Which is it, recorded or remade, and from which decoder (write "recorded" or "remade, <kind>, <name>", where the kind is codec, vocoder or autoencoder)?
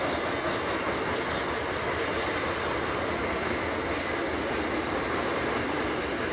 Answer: recorded